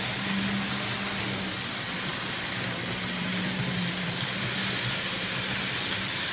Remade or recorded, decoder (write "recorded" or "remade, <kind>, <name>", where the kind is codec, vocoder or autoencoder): recorded